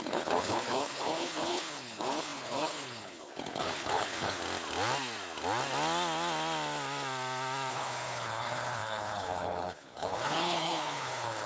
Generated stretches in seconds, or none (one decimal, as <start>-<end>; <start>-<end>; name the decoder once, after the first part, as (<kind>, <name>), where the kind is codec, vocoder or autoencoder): 0.0-4.4 (codec, HILCodec); 7.7-11.5